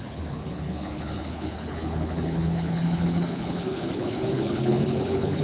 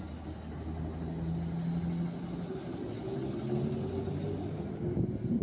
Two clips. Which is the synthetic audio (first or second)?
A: first